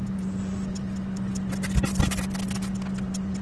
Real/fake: real